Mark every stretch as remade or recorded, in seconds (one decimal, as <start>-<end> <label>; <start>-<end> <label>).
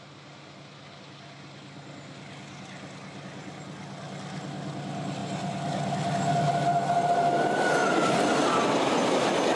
0.0-9.6 recorded